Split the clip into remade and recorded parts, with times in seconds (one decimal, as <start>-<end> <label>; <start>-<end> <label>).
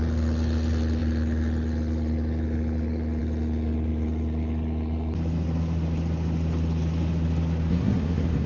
0.0-7.7 recorded; 7.7-8.5 remade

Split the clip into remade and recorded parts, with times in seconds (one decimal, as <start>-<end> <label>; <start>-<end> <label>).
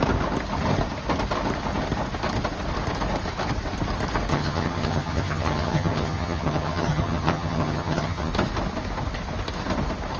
0.0-4.3 recorded; 4.3-8.3 remade; 8.3-10.2 recorded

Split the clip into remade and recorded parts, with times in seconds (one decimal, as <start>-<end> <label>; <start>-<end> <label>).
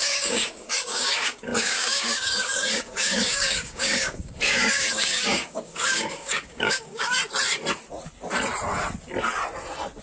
0.0-7.2 remade; 7.2-10.0 recorded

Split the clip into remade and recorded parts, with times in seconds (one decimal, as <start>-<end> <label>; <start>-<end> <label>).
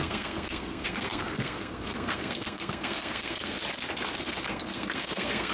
0.0-3.6 remade; 3.6-4.2 recorded; 4.2-5.5 remade